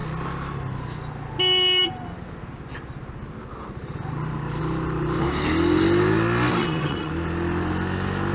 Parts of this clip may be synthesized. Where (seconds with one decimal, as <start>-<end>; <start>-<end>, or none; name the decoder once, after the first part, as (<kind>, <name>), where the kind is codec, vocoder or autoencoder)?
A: 6.6-7.1 (vocoder, WaveNeXt)